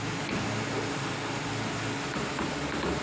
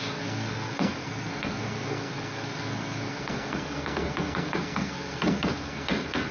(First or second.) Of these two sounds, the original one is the first